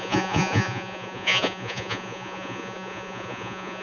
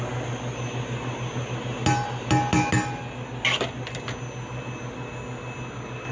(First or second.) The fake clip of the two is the first